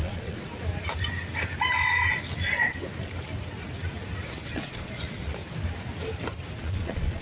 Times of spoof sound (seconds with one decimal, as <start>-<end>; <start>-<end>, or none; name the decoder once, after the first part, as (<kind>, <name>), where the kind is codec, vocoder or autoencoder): 0.0-0.5 (vocoder, Vocos); 4.5-5.4; 6.6-7.2